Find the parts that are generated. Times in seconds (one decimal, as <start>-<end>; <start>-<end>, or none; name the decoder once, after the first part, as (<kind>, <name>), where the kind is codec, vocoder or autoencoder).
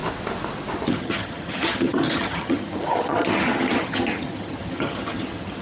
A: 0.9-5.6 (vocoder, HiFi-GAN)